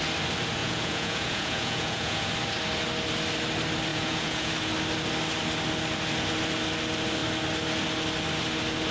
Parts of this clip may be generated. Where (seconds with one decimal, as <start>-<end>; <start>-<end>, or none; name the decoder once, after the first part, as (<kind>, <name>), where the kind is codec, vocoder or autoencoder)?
0.6-2.3 (vocoder, Vocos); 3.9-4.5